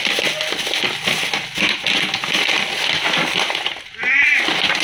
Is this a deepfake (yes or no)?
no